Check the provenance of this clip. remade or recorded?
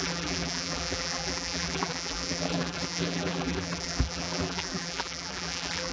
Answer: remade